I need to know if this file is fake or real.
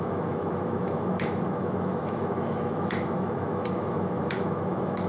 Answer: fake